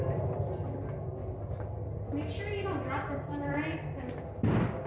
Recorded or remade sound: recorded